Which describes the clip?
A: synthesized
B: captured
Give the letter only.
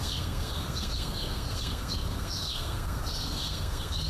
A